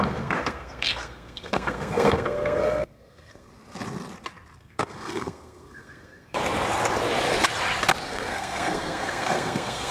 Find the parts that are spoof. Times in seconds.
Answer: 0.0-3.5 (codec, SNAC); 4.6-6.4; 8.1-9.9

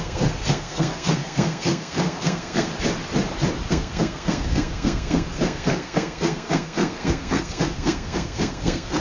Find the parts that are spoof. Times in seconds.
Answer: 0.0-2.7 (codec, SNAC); 3.7-9.0

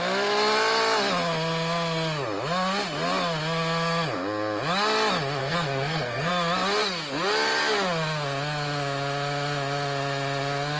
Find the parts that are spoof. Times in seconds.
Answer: 5.4-6.3 (codec, SNAC)

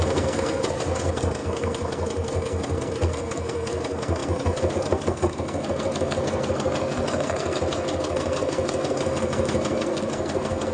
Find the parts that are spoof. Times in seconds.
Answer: 0.0-10.7 (codec, SNAC)

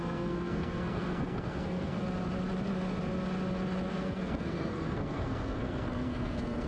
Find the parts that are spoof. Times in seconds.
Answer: 0.0-2.0 (codec, SNAC); 3.9-6.7

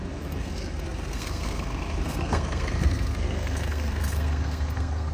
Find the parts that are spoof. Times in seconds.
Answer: 0.0-5.1 (codec, SNAC)

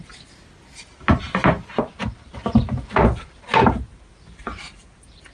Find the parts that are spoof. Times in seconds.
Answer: none

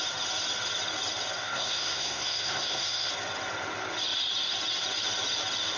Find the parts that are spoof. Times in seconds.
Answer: 1.4-3.1 (codec, SNAC)